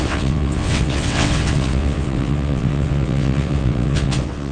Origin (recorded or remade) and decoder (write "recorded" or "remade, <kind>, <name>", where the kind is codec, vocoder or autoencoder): remade, vocoder, WaveNeXt